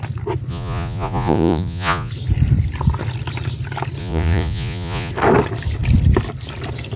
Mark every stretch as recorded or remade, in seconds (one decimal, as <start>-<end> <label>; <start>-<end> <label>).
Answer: 0.0-0.5 recorded; 0.5-2.1 remade; 2.1-4.0 recorded; 4.0-5.1 remade; 5.1-7.0 recorded